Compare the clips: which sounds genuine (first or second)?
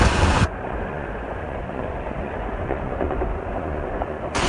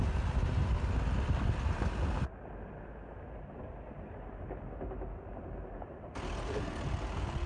second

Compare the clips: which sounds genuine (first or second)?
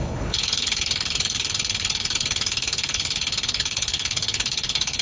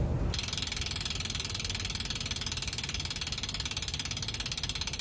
second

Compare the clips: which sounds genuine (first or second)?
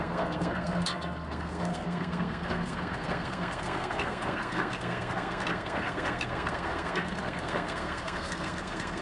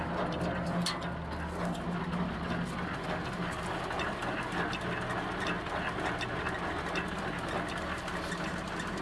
second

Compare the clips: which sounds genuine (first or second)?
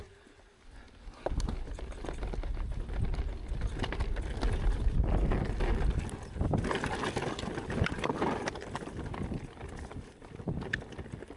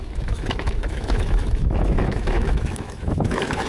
first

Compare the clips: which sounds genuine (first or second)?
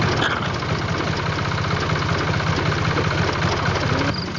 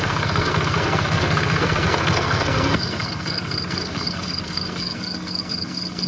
first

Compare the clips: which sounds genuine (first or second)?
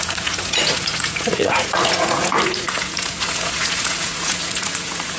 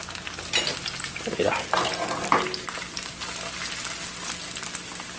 second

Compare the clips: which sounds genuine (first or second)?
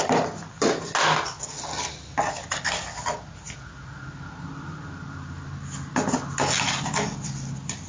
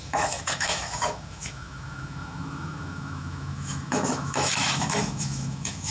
first